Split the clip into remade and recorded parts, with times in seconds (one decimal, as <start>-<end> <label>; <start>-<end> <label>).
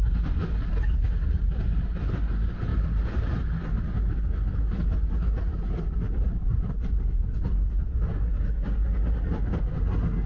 0.0-10.3 recorded